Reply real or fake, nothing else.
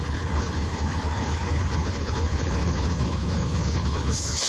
fake